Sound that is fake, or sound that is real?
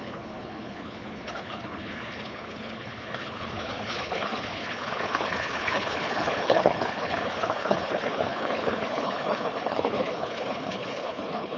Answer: fake